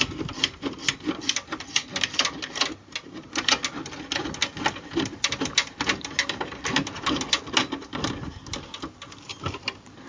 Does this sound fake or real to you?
real